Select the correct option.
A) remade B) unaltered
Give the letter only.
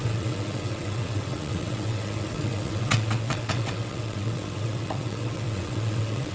A